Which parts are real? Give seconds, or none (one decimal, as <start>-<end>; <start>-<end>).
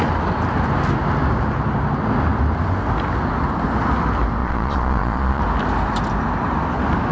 0.0-4.4; 5.4-7.1